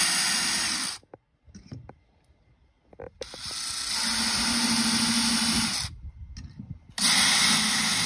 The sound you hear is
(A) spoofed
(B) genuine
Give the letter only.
B